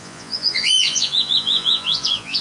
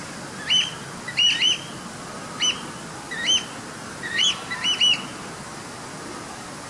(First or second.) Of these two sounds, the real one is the second